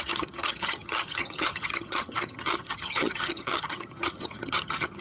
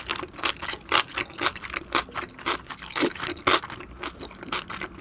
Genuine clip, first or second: second